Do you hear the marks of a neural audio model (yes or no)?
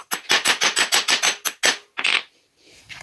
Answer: no